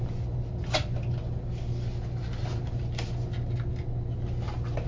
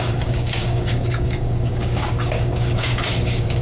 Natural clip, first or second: first